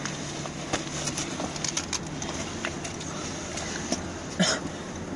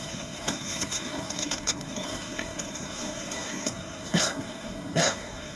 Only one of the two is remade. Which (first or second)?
second